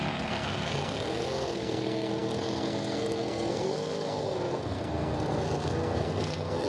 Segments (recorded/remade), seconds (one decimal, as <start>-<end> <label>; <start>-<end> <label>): 0.0-6.7 remade